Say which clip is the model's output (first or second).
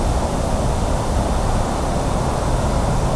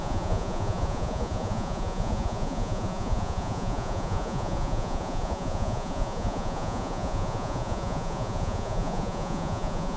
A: second